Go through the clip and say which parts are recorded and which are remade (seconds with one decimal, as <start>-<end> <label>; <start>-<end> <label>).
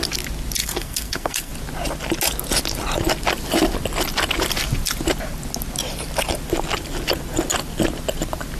0.0-0.6 recorded; 0.6-1.5 remade; 1.5-8.6 recorded